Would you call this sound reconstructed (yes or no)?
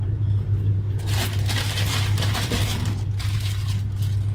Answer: no